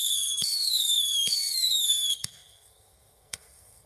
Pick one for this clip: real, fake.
fake